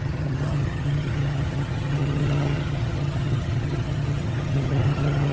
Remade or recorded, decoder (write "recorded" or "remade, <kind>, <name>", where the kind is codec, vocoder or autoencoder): remade, vocoder, HiFi-GAN